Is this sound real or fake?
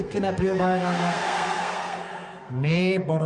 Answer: fake